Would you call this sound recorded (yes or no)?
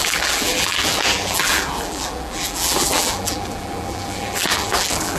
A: no